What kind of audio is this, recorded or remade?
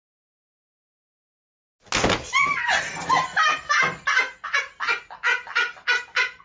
recorded